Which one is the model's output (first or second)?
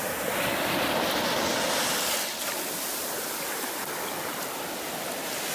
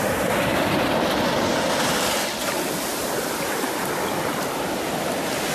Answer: second